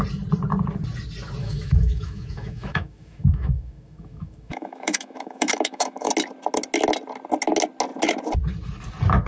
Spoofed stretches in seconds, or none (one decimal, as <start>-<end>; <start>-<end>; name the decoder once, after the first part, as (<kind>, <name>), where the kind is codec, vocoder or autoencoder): 1.4-6.1 (autoencoder, DAC-VAE)